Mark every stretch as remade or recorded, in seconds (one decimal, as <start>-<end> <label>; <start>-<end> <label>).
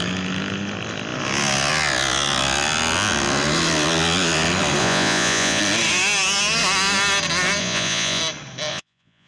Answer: 0.0-4.8 recorded; 4.8-5.6 remade; 5.6-7.6 recorded; 7.6-8.2 remade; 8.2-8.7 recorded; 8.7-9.3 remade